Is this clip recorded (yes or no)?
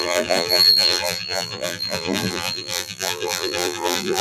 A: no